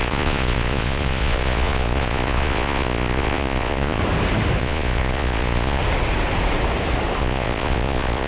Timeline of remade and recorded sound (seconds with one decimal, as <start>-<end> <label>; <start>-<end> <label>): 0.0-4.0 remade; 4.0-4.6 recorded; 4.6-5.8 remade; 5.8-7.2 recorded; 7.2-8.3 remade